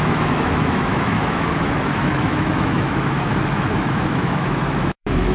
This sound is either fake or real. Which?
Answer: fake